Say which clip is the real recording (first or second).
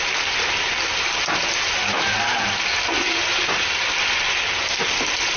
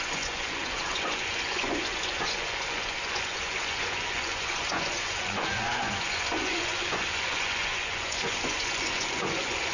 first